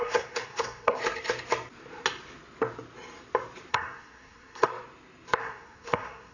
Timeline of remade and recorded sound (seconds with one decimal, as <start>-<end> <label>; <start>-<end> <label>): 0.0-1.0 remade; 1.0-3.7 recorded; 3.7-4.7 remade; 4.7-5.4 recorded; 5.4-6.3 remade